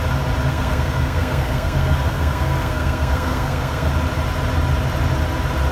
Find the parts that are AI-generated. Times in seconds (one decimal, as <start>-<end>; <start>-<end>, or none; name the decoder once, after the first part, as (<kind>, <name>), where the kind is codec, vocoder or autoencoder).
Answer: 0.5-3.9 (codec, SNAC)